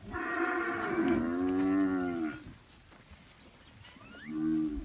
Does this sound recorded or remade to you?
recorded